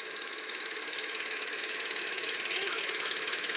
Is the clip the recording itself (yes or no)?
no